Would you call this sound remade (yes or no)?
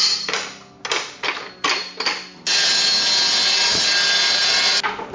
no